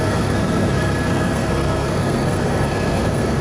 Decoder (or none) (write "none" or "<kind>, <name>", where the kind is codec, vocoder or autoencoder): codec, SNAC